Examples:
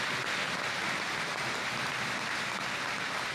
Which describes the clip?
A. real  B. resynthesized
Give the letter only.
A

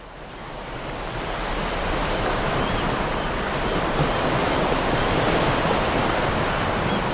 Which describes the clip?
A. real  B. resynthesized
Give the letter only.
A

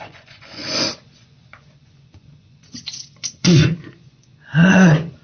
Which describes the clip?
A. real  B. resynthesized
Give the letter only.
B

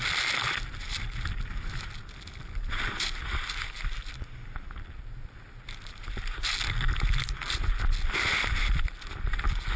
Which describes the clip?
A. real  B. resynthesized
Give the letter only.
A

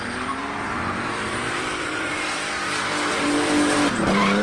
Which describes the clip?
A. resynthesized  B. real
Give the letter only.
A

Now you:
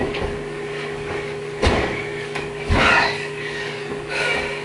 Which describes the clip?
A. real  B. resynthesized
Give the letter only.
B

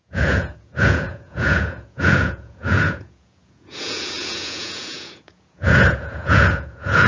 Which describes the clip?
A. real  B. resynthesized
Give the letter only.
B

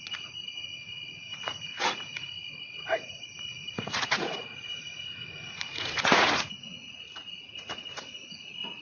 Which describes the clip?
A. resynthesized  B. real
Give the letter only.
A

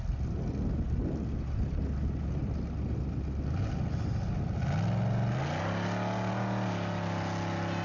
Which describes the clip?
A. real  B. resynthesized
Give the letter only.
A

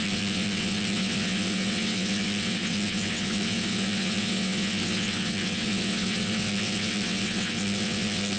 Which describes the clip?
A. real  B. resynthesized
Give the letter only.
B